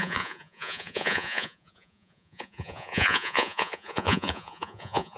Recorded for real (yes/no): no